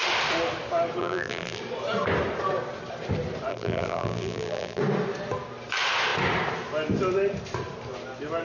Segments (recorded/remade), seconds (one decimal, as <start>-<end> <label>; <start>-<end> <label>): 0.0-1.0 recorded; 1.0-1.6 remade; 1.6-3.5 recorded; 3.5-4.8 remade; 4.8-8.4 recorded